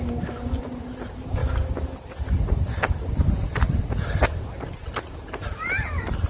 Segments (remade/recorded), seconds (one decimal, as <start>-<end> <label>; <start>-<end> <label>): 0.0-6.3 recorded